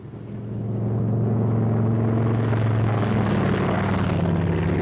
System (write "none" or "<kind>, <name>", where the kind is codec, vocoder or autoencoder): none